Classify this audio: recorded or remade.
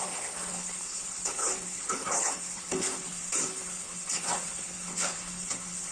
remade